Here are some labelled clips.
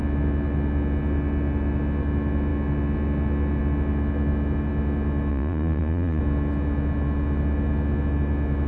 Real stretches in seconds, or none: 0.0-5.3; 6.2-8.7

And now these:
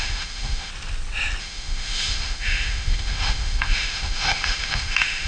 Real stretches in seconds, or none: 0.7-1.4

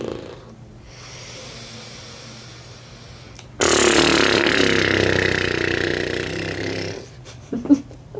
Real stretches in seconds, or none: 0.0-8.2

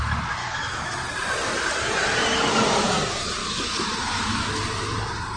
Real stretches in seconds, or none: 0.0-0.4; 1.1-3.4; 4.5-5.4

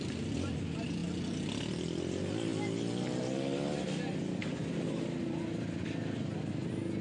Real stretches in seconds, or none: 0.0-7.0

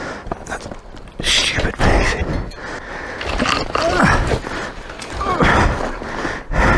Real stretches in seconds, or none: 0.0-6.8

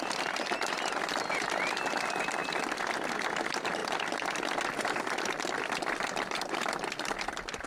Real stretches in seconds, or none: 2.4-3.3; 3.8-4.8

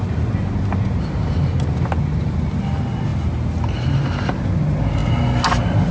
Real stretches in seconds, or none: 0.0-5.9